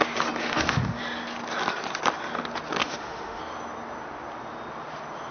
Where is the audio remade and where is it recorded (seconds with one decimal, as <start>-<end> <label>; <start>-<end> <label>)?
0.0-0.4 recorded; 0.4-1.0 remade; 1.0-2.8 recorded; 2.8-3.4 remade; 3.4-5.3 recorded